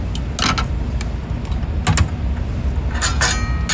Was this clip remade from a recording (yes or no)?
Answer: no